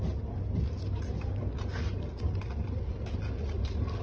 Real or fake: real